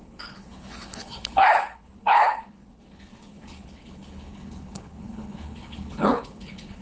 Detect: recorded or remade remade